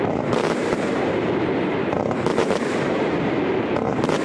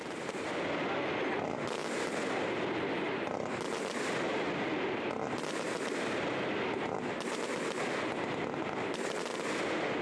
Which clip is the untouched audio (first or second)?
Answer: second